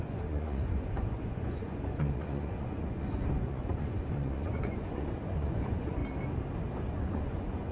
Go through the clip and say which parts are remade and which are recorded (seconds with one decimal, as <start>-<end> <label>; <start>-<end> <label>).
0.0-6.0 remade; 6.0-7.0 recorded; 7.0-7.7 remade